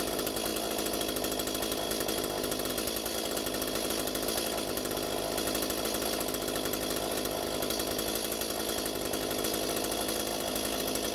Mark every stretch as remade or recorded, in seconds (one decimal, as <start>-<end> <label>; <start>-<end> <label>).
0.0-11.1 recorded